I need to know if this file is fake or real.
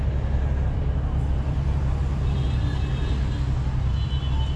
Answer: real